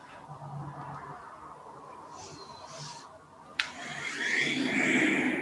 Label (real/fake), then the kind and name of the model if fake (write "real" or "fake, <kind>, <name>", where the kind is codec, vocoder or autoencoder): real